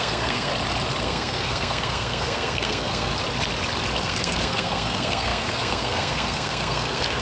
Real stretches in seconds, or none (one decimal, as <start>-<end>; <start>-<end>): 0.5-1.0; 3.1-4.0